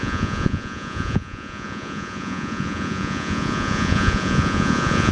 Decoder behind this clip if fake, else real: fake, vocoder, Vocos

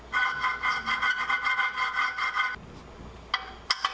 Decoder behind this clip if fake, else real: real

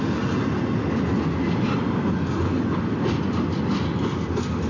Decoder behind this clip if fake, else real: real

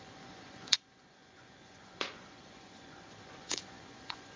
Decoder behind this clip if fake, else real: fake, vocoder, Vocos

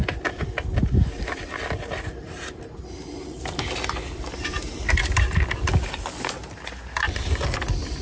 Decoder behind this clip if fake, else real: real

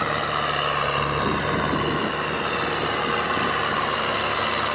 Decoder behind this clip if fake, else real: real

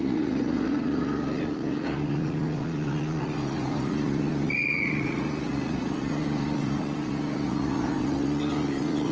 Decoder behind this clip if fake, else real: fake, vocoder, Vocos